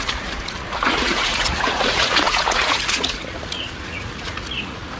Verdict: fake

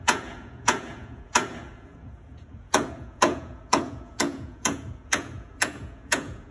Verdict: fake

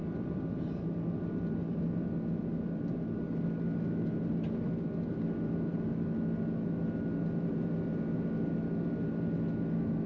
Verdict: real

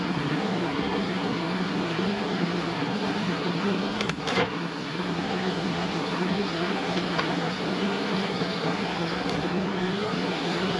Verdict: fake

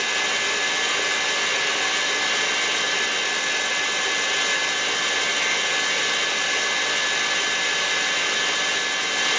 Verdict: real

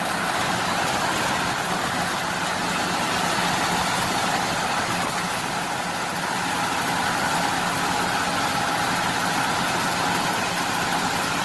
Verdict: real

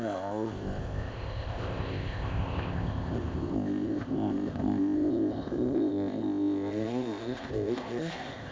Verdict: fake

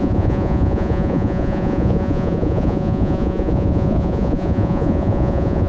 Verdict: fake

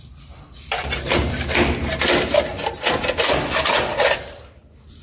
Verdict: real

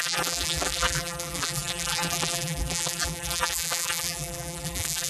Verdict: fake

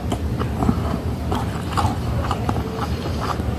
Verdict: real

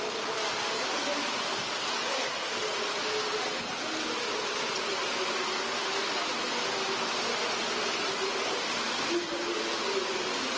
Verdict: real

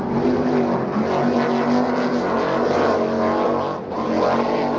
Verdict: real